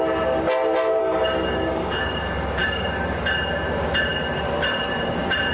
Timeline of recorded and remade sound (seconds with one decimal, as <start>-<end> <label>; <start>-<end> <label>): 0.0-1.0 recorded; 1.0-2.2 remade; 2.2-2.6 recorded; 2.6-3.2 remade; 3.2-5.5 recorded